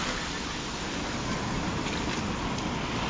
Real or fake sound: real